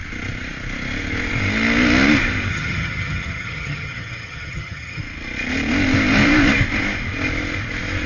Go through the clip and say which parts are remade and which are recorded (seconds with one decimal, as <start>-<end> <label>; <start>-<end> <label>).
0.0-2.5 recorded; 2.5-5.0 remade; 5.0-8.1 recorded

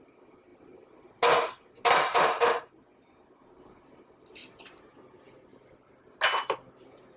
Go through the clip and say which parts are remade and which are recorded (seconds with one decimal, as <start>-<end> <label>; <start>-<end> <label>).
0.0-7.2 recorded

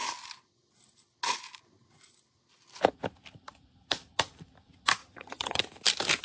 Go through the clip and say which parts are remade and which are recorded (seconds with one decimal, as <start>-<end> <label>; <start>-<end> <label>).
0.0-5.0 recorded; 5.0-5.6 remade; 5.6-6.2 recorded

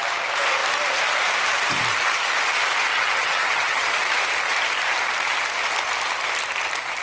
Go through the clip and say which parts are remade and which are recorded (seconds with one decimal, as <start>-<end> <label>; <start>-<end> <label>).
0.0-2.9 recorded; 2.9-3.9 remade; 3.9-7.0 recorded

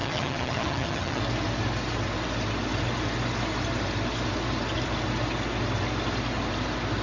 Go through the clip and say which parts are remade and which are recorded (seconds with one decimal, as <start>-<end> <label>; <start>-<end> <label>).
0.0-1.2 remade; 1.2-7.0 recorded

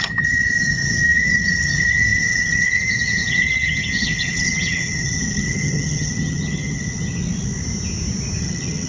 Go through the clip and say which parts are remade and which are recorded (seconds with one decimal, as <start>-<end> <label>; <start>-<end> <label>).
0.0-7.2 remade; 7.2-8.4 recorded; 8.4-8.9 remade

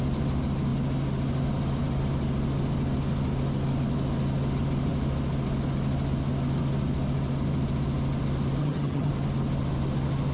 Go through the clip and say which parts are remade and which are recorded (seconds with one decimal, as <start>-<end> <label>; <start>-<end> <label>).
0.0-8.6 recorded; 8.6-9.1 remade; 9.1-10.3 recorded